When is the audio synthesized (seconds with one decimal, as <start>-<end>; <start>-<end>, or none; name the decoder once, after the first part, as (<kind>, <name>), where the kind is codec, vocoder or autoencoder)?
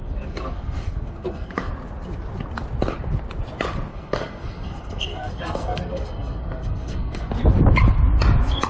0.0-1.7 (codec, SNAC); 3.9-7.3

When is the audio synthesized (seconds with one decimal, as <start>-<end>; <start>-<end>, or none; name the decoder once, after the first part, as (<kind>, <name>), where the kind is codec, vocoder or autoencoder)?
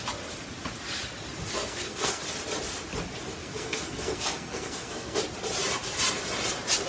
1.5-2.2 (codec, SNAC); 3.4-5.2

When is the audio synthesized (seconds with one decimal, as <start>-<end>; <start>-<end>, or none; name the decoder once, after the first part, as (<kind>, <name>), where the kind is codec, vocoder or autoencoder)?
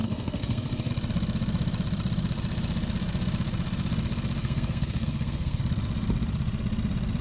0.0-0.9 (codec, SNAC); 4.4-5.6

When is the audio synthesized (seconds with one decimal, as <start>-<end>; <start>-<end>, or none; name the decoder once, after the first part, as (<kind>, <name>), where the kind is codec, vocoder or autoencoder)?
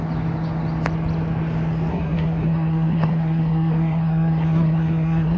1.9-5.4 (codec, SNAC)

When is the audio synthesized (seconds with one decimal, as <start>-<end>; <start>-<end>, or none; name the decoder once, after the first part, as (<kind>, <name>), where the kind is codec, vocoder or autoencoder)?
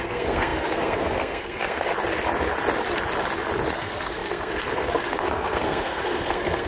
0.0-1.9 (codec, SNAC); 3.7-6.7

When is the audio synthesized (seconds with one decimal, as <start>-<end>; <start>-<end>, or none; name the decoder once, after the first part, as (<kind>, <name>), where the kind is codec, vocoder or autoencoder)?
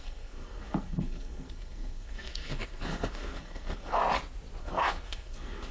0.0-4.0 (codec, SNAC); 4.6-5.7